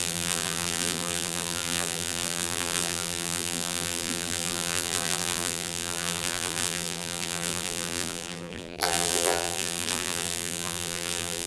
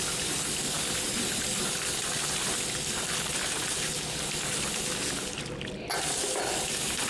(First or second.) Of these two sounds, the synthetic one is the first